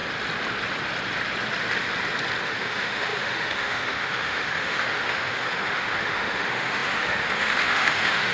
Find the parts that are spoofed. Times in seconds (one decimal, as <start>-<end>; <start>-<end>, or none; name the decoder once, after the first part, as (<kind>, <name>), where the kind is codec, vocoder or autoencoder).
2.4-8.3 (autoencoder, DAC-VAE)